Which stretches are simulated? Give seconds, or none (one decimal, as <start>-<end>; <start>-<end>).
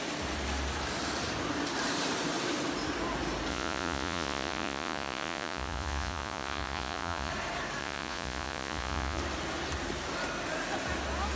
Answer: 3.5-7.3; 7.8-9.2